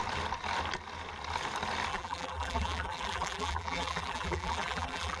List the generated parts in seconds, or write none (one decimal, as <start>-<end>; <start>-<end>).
1.9-5.2

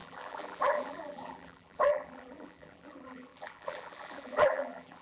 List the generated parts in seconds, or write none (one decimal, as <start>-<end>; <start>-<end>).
0.0-5.0

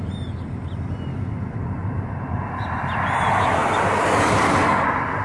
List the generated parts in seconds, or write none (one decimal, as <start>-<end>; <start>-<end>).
1.8-2.4

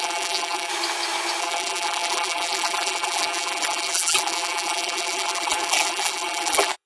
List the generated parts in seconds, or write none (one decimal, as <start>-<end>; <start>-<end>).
0.0-0.7; 1.4-6.9